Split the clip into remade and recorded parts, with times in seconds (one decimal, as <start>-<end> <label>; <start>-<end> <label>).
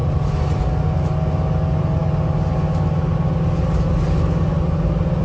0.0-5.2 recorded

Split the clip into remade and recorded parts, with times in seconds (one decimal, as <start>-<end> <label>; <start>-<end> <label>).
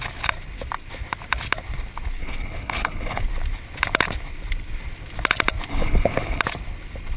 0.0-2.2 recorded; 2.2-3.2 remade; 3.2-5.7 recorded; 5.7-6.4 remade; 6.4-7.2 recorded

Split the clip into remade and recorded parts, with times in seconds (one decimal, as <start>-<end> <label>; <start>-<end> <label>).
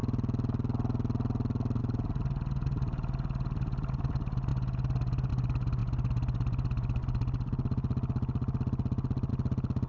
0.0-9.9 recorded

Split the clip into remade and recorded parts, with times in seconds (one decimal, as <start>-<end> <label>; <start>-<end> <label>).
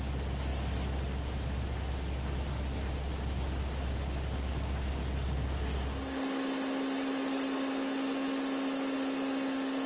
0.0-9.9 recorded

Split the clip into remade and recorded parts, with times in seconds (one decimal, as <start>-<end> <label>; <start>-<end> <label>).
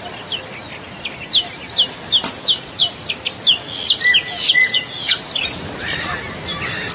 0.0-4.2 recorded; 4.2-5.2 remade; 5.2-6.9 recorded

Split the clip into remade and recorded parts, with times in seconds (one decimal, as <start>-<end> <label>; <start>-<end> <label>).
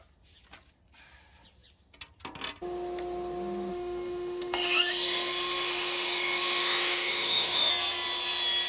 0.0-3.7 recorded; 3.7-7.7 remade; 7.7-8.7 recorded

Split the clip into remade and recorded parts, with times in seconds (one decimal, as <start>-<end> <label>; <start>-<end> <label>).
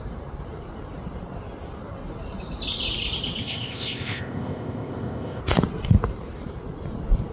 0.0-3.4 recorded; 3.4-5.4 remade; 5.4-7.3 recorded